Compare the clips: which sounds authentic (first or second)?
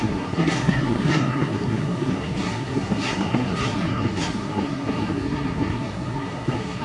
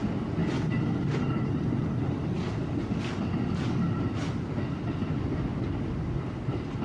second